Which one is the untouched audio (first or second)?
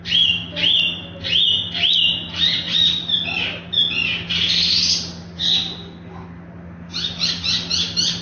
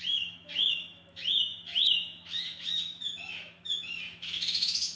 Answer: first